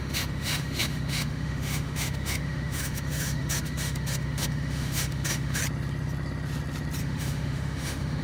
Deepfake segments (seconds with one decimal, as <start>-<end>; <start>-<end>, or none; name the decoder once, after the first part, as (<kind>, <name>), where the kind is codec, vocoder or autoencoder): 0.0-5.6 (autoencoder, DAC-VAE); 7.0-8.2